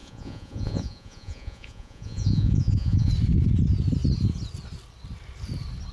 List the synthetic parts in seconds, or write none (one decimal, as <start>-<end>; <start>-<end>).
0.0-3.1